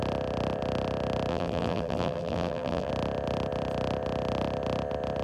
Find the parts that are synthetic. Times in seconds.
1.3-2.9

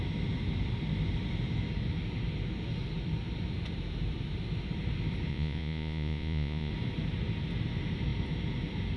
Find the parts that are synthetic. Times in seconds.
5.3-6.7

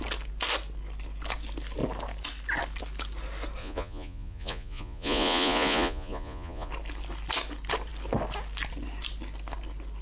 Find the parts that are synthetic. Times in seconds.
3.6-6.7

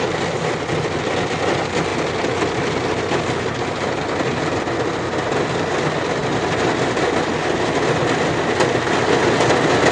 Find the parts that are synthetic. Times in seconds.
none

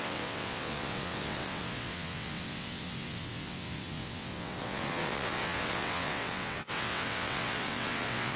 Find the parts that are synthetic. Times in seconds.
0.0-8.4